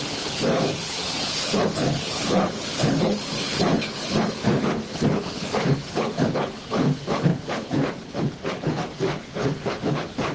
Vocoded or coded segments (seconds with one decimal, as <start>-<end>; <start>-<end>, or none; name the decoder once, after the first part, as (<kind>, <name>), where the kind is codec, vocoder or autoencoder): 0.0-10.3 (codec, HILCodec)